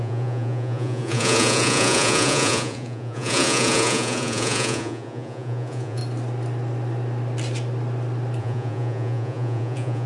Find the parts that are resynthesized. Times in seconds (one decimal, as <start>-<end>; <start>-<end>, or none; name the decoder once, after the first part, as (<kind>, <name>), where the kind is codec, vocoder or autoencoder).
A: 0.0-6.0 (vocoder, Vocos); 8.4-10.1